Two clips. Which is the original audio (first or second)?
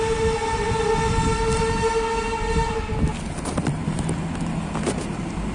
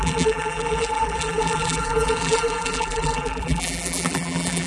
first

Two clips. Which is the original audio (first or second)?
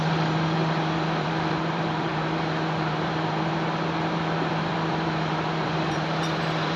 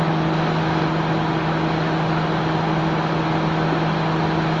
second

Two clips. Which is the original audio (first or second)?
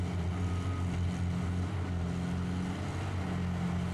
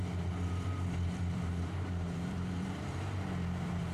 first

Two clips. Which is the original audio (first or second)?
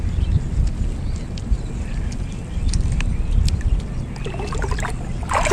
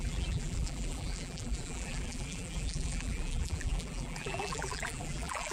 first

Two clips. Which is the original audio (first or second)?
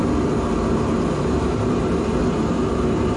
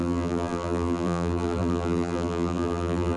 first